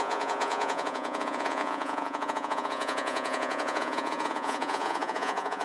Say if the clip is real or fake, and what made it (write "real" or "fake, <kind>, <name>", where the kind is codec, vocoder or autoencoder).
fake, vocoder, Vocos